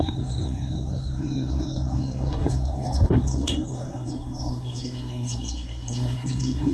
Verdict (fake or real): fake